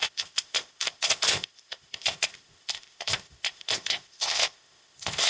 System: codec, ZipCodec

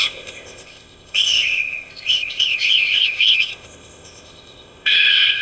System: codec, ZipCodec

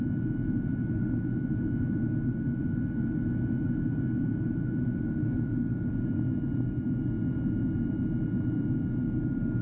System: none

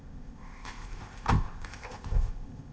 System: codec, ZipCodec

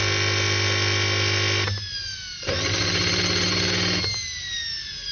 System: none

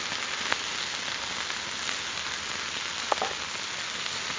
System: none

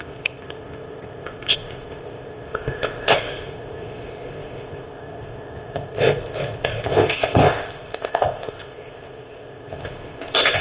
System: codec, ZipCodec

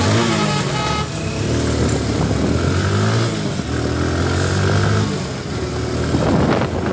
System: none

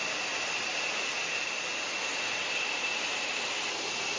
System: none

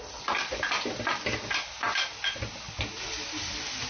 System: none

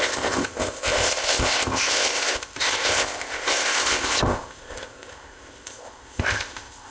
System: codec, ZipCodec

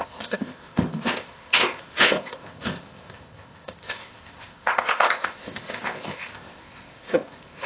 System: codec, ZipCodec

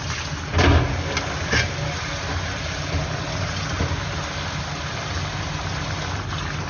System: none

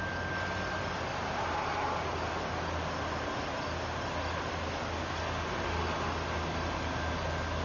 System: none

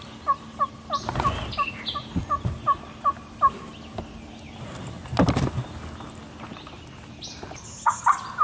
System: none